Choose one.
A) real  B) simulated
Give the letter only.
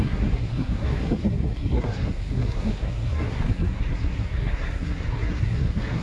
B